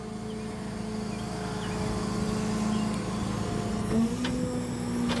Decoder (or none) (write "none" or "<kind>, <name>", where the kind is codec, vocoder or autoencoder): none